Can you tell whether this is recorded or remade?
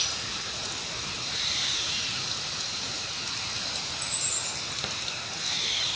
recorded